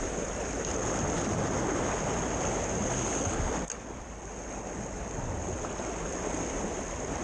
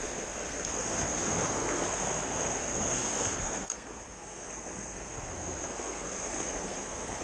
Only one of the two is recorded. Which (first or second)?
first